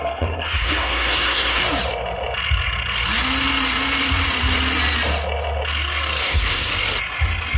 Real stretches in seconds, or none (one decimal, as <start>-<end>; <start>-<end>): 1.6-6.2; 6.7-7.6